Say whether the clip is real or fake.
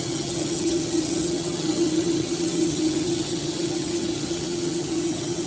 fake